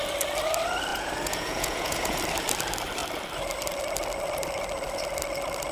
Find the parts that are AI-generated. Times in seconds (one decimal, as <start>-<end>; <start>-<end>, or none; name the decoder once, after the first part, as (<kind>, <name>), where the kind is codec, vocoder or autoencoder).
0.9-2.2 (vocoder, Vocos)